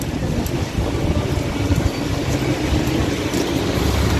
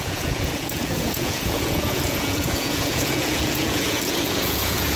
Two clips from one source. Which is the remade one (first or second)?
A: second